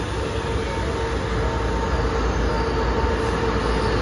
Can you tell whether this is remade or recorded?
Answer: recorded